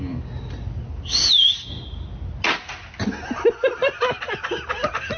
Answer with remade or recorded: recorded